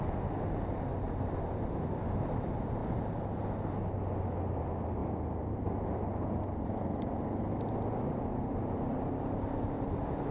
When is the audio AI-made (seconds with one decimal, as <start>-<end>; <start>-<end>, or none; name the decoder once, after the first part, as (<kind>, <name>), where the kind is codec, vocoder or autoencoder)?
none